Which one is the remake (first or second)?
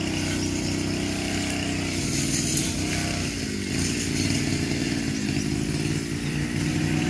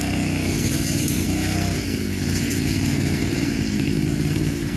second